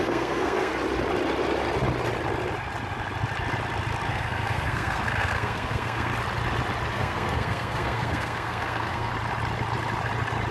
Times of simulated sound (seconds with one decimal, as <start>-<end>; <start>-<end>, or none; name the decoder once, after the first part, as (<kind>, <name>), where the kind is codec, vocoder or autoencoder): 0.0-0.7 (codec, SNAC); 4.1-6.1; 6.9-9.1